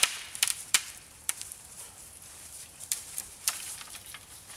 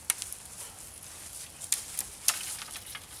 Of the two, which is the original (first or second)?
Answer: second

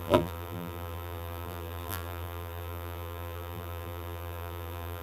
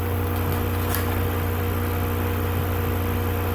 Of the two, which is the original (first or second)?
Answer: second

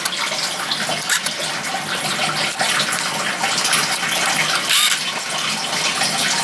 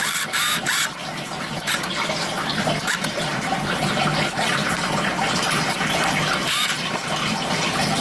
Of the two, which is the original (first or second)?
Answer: first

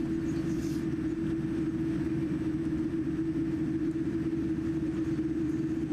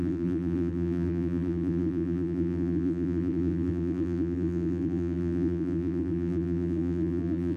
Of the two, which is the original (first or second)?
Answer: first